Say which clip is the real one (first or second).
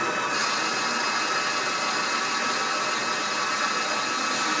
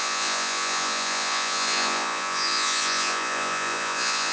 first